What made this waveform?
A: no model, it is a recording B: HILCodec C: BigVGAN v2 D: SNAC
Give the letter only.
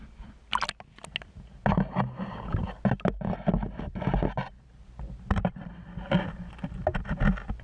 A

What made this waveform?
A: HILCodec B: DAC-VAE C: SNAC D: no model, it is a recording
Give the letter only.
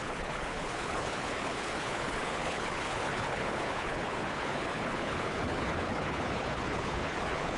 A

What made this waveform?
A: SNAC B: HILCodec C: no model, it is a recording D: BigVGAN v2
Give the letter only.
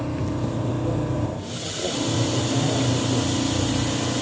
C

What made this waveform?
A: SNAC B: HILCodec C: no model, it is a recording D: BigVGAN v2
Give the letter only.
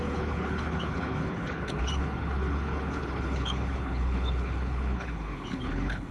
B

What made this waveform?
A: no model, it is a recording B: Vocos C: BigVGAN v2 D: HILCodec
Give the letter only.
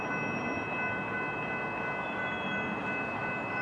A